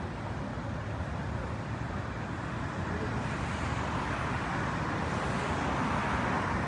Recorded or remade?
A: recorded